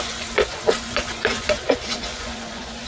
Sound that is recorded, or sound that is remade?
remade